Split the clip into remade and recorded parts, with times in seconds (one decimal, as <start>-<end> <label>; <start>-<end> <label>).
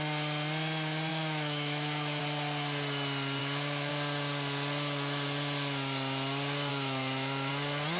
0.0-1.1 recorded; 1.1-2.2 remade; 2.2-3.4 recorded; 3.4-3.9 remade; 3.9-6.7 recorded; 6.7-7.5 remade; 7.5-8.0 recorded